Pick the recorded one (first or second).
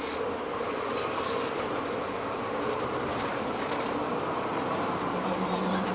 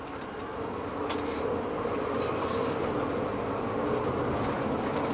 second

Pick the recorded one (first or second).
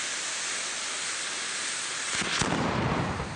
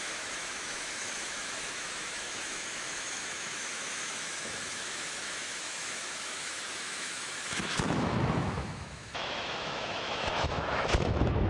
first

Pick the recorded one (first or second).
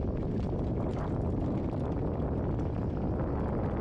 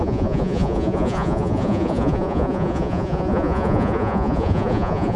first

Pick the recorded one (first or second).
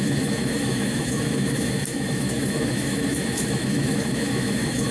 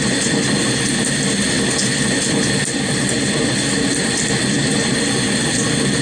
second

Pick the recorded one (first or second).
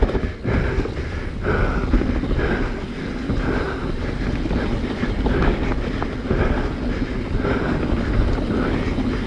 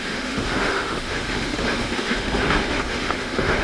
first